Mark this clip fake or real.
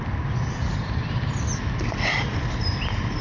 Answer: real